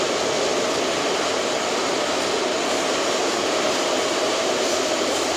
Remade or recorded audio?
recorded